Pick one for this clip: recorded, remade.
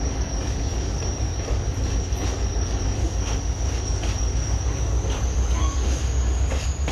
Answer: remade